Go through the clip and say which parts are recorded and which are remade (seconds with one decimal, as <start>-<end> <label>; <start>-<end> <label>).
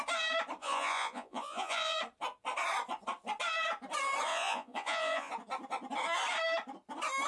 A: 0.0-0.6 recorded; 0.6-2.0 remade; 2.0-4.3 recorded; 4.3-5.3 remade; 5.3-7.3 recorded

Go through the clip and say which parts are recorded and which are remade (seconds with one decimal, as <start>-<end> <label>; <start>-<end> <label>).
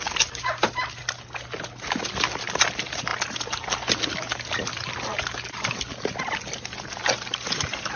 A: 0.0-8.0 recorded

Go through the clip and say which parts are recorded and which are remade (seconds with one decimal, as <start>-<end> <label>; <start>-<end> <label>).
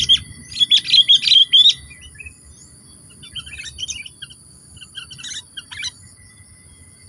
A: 0.0-7.1 recorded